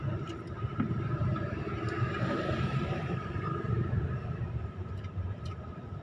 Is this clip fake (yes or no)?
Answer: yes